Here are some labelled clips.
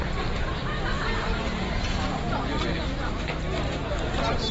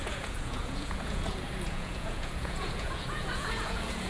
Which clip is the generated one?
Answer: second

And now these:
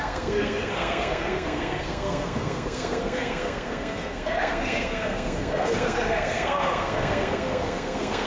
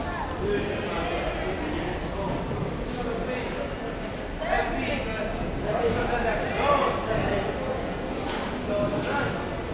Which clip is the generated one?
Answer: first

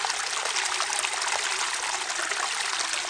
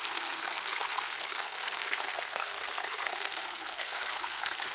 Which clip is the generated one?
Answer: second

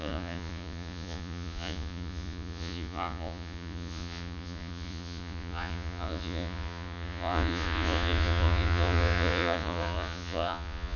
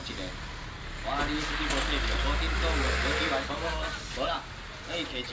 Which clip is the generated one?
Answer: first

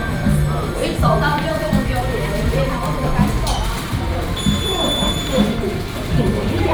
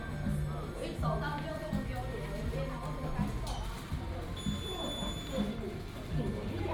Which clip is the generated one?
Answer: first